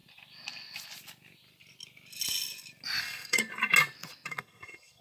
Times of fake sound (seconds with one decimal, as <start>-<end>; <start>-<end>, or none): 3.0-3.5; 4.3-5.0